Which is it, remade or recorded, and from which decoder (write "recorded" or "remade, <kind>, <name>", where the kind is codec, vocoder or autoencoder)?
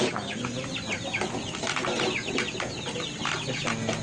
recorded